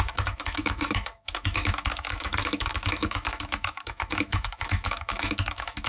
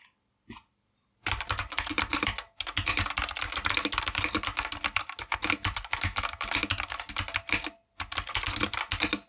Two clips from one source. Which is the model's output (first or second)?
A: first